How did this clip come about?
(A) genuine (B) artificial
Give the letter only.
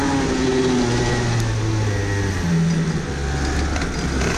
A